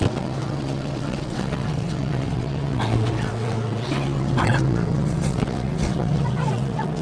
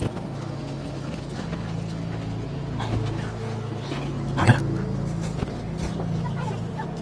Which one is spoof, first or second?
first